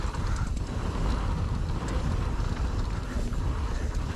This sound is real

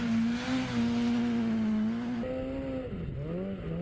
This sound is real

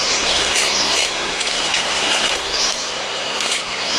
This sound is fake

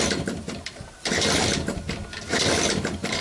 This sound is fake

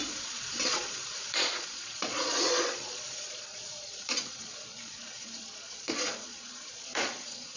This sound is fake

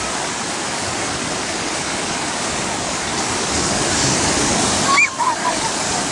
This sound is fake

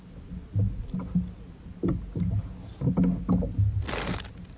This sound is real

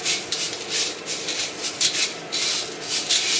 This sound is real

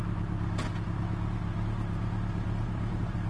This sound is real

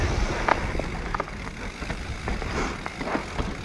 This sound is real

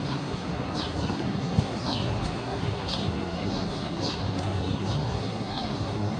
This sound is fake